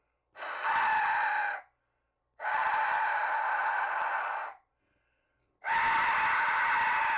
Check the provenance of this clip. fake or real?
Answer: real